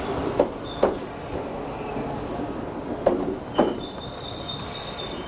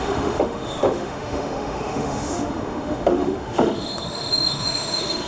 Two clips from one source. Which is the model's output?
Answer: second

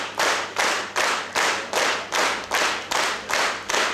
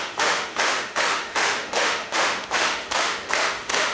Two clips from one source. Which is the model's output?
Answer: second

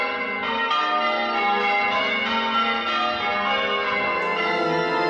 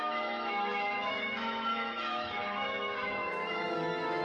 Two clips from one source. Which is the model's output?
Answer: second